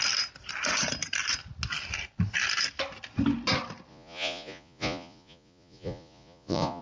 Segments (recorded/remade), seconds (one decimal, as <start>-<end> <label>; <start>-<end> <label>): 0.0-3.9 recorded; 3.9-6.8 remade